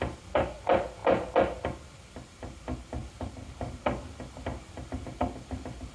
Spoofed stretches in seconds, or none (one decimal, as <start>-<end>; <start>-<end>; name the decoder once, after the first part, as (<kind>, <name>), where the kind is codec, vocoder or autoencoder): none